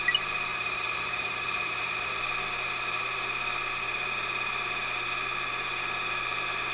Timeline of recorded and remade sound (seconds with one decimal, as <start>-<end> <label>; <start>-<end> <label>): 0.0-0.5 recorded; 0.5-2.2 remade; 2.2-6.7 recorded